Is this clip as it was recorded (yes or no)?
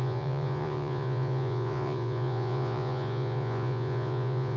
no